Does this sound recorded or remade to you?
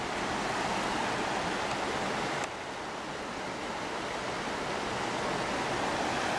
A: recorded